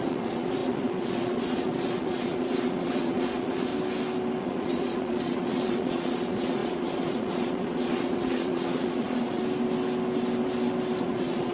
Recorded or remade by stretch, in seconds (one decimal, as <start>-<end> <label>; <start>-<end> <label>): 0.0-3.7 remade; 3.7-4.4 recorded; 4.4-9.4 remade; 9.4-11.0 recorded; 11.0-11.5 remade